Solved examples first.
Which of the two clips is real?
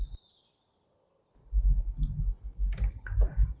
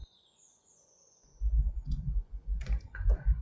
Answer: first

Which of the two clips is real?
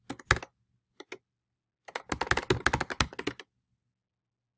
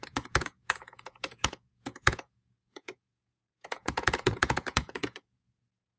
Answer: first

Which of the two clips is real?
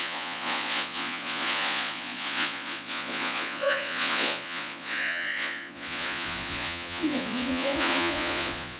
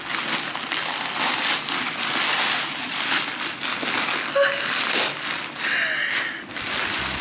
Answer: second